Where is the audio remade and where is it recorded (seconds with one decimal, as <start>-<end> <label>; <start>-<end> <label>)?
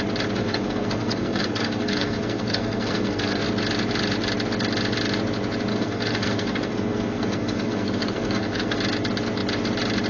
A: 0.0-0.4 recorded; 0.4-3.4 remade; 3.4-5.7 recorded; 5.7-8.8 remade; 8.8-10.1 recorded